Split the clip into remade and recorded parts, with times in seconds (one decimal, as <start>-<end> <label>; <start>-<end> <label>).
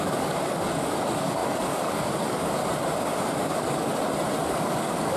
0.0-2.6 remade; 2.6-3.3 recorded; 3.3-3.9 remade; 3.9-4.5 recorded; 4.5-5.2 remade